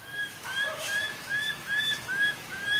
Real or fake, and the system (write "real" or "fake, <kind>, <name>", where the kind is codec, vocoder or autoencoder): fake, autoencoder, DAC-VAE